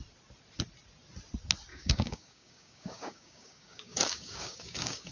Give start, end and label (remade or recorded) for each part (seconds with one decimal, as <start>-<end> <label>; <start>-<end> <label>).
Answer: 0.0-1.7 recorded; 1.7-5.1 remade